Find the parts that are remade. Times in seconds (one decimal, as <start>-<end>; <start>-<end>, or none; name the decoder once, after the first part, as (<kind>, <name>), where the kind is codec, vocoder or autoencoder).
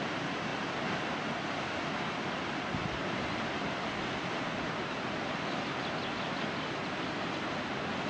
none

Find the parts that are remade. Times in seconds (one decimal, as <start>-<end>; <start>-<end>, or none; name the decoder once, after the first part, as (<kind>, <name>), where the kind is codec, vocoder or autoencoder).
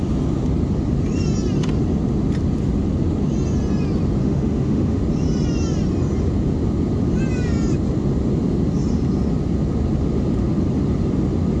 4.2-5.0 (autoencoder, DAC-VAE)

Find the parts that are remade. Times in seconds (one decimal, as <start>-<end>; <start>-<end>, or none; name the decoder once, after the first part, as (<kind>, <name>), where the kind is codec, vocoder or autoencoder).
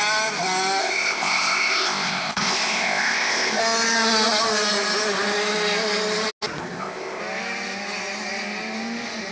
0.8-3.6 (codec, ZipCodec); 6.6-7.2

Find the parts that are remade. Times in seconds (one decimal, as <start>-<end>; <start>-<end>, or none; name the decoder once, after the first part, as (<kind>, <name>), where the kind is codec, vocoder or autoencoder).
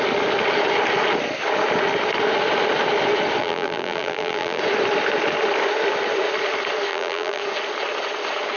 3.4-4.6 (vocoder, BigVGAN v2); 6.9-7.4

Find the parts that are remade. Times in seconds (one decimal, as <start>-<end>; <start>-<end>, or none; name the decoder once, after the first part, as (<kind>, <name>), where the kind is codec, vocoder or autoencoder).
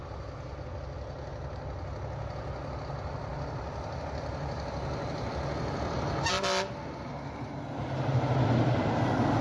none